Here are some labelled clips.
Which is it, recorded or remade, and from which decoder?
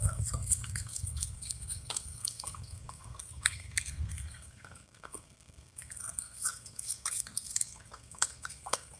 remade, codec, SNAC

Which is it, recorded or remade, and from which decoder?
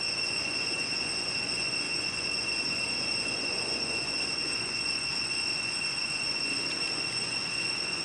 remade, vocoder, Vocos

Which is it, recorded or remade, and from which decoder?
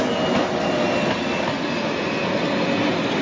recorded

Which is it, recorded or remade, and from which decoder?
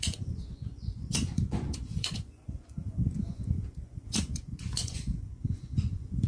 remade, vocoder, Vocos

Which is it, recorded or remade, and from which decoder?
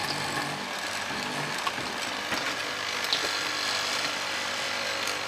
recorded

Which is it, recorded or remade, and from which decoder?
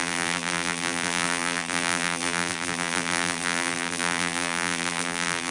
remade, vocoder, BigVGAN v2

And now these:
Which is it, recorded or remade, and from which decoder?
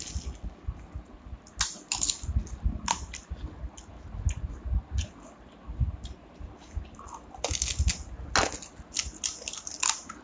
recorded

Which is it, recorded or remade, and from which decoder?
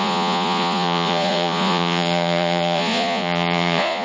remade, vocoder, Vocos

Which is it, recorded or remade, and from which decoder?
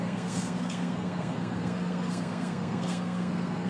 remade, codec, SNAC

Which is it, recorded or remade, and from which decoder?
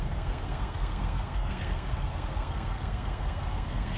remade, codec, SNAC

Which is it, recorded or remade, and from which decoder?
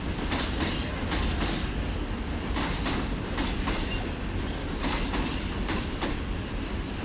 recorded